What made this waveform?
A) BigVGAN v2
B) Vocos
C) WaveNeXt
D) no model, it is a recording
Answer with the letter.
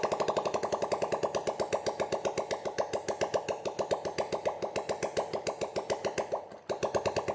D